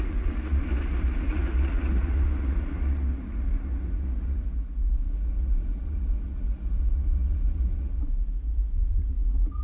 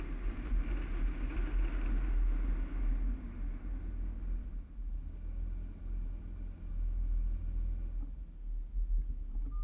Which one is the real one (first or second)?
second